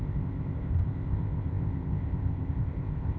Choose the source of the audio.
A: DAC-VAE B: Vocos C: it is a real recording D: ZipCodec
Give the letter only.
D